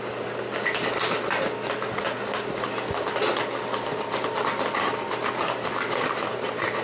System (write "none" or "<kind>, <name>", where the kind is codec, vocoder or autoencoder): none